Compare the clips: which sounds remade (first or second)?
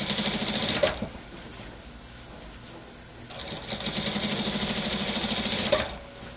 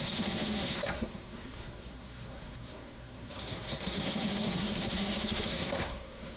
second